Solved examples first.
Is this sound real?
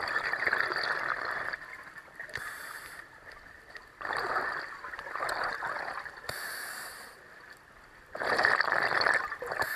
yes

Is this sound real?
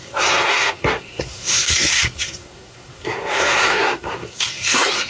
no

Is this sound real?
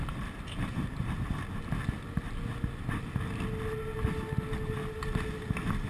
yes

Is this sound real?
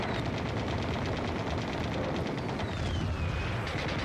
yes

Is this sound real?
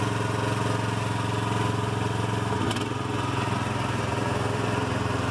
yes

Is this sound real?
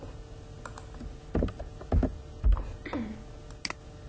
yes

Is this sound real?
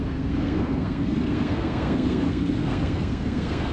no